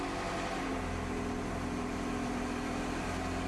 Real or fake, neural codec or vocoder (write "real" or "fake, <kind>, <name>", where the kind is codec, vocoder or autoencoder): real